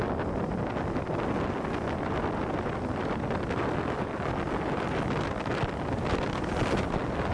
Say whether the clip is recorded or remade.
recorded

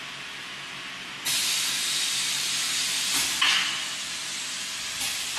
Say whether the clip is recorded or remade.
recorded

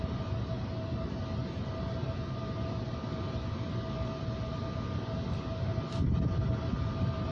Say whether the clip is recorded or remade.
recorded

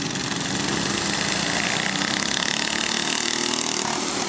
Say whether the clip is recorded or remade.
recorded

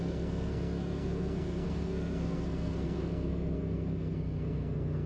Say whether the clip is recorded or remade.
remade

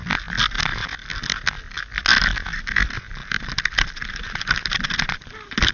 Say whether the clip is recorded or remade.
recorded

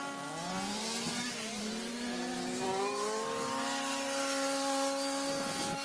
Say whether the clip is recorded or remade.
recorded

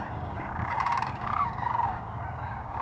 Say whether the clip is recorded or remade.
remade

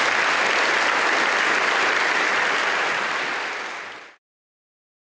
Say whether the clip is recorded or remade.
recorded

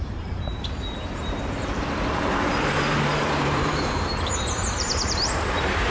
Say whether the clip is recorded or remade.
remade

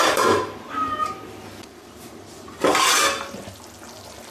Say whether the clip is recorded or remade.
remade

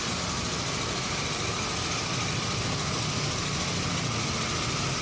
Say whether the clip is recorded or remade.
recorded